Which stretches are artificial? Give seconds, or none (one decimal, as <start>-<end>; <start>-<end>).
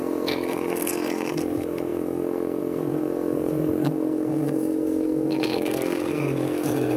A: 0.0-7.0